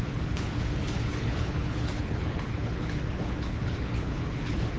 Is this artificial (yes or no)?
yes